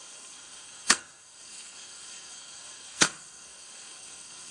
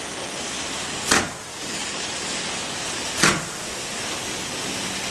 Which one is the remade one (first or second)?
first